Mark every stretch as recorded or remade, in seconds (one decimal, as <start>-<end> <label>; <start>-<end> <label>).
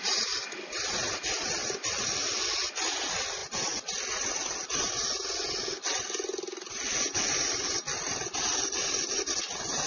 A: 0.0-9.9 recorded